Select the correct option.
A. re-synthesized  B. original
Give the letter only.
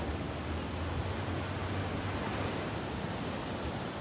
B